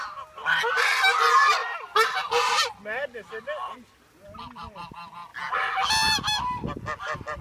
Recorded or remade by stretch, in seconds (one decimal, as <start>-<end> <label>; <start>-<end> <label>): 0.0-7.4 recorded